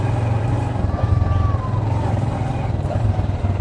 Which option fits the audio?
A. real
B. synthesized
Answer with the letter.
B